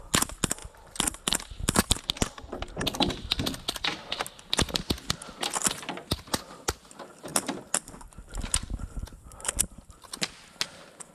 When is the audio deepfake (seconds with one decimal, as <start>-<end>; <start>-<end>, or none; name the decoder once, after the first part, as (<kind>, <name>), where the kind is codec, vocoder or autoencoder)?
0.6-2.0 (vocoder, BigVGAN v2); 7.3-10.1